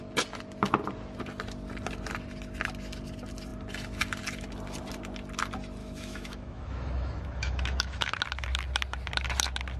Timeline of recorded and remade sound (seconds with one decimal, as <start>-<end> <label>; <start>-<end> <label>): 0.0-5.8 recorded; 5.8-8.1 remade; 8.1-9.8 recorded